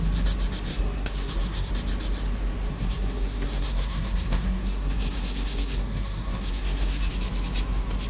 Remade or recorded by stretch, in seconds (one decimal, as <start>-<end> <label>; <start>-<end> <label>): 0.0-0.7 recorded; 0.7-1.7 remade; 1.7-2.7 recorded; 2.7-7.1 remade; 7.1-8.1 recorded